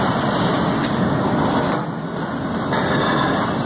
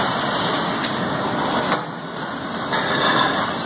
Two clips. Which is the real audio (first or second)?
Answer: first